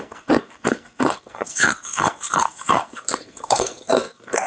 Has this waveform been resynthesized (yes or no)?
yes